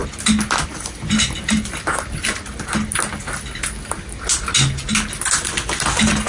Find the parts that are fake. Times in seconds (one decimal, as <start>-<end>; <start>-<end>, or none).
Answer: none